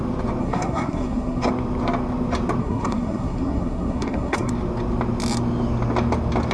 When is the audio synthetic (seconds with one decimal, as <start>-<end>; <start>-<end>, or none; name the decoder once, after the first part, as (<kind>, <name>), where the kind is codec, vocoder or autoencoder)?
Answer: 0.4-1.5 (codec, SNAC); 2.6-4.5